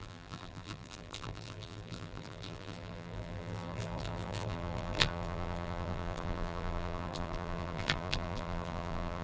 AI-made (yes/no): yes